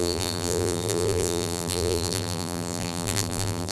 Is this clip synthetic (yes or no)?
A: yes